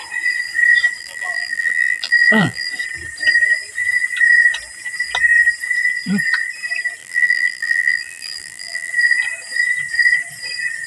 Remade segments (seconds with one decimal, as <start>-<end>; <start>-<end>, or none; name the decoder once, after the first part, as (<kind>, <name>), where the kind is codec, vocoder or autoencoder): 1.0-2.7 (vocoder, BigVGAN v2); 7.0-8.9